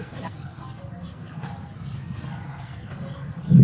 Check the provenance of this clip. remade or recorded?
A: remade